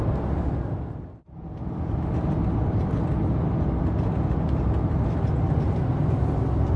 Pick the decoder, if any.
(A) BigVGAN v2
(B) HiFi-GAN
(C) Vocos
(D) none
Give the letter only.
D